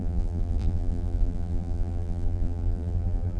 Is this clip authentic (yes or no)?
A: no